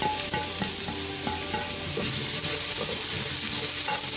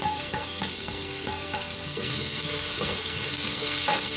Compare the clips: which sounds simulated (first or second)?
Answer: second